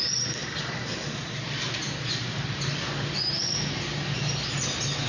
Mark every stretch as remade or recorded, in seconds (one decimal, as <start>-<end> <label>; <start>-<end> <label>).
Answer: 0.0-5.1 recorded